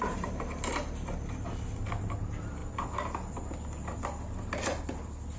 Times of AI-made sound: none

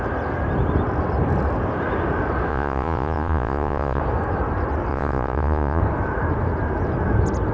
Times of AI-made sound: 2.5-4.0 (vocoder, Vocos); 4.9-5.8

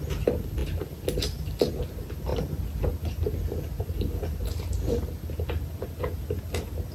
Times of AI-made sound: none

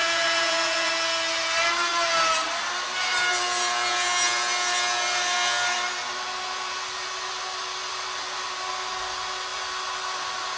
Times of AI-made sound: 0.0-0.9 (vocoder, Vocos)

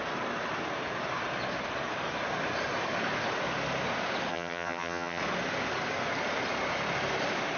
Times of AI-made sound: 4.3-5.2 (vocoder, HiFi-GAN)

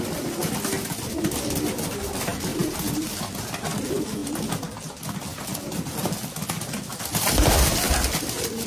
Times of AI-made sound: none

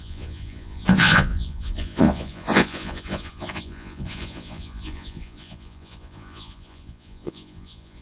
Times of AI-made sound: 0.0-8.0 (vocoder, Vocos)

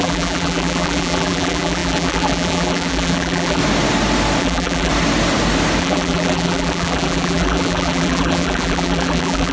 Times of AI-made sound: 0.0-3.6 (vocoder, BigVGAN v2); 4.4-4.9; 5.8-9.5